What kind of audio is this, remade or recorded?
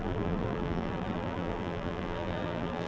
remade